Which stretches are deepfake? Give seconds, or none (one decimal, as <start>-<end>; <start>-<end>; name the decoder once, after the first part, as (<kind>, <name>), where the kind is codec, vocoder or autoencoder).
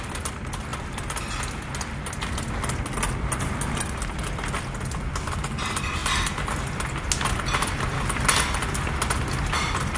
none